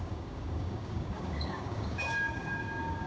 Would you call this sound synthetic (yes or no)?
yes